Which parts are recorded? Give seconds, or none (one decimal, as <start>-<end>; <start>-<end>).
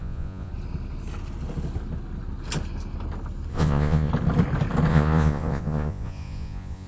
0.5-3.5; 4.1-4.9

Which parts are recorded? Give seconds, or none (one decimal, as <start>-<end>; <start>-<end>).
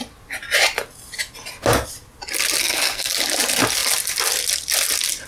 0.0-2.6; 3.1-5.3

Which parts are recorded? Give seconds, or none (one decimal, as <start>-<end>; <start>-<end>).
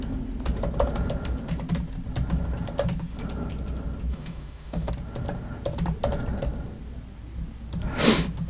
0.0-4.1; 4.9-8.5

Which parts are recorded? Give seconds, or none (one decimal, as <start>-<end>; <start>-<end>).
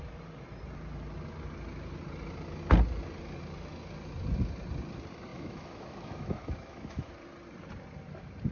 0.0-5.3; 7.1-8.5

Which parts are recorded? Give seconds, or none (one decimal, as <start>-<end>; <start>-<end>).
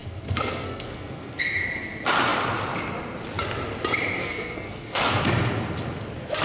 1.4-4.2; 5.0-6.4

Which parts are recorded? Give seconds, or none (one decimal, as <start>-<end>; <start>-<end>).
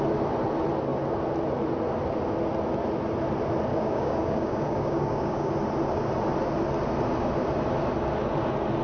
0.0-3.7; 5.5-8.8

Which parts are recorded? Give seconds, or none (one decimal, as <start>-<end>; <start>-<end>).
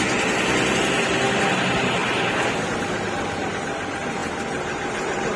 0.0-5.4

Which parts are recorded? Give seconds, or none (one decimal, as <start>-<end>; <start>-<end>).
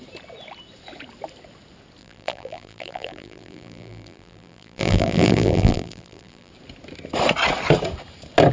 0.0-2.0; 6.5-8.5